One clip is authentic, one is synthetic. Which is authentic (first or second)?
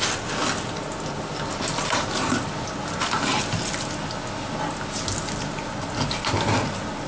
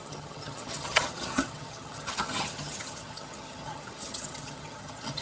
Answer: first